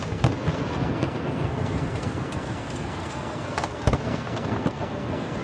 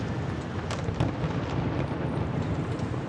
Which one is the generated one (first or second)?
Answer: first